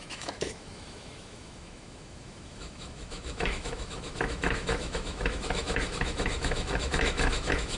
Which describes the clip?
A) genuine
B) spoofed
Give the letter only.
B